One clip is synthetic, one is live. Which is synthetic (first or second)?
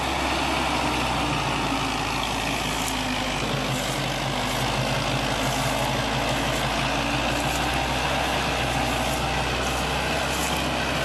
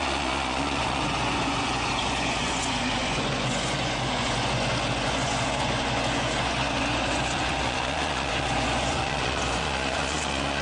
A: second